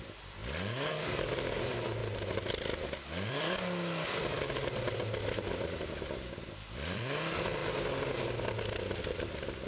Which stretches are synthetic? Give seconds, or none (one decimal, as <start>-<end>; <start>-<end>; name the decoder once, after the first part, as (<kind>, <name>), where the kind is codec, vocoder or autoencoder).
0.0-0.4 (vocoder, BigVGAN v2); 0.9-2.0; 3.3-7.6; 9.0-9.7